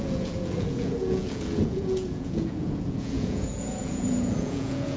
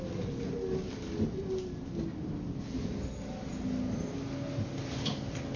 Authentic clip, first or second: second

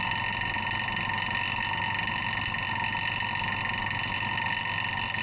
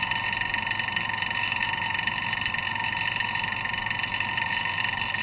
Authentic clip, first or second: first